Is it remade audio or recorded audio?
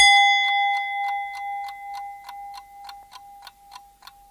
recorded